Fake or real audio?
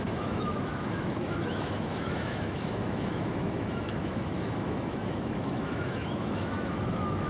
fake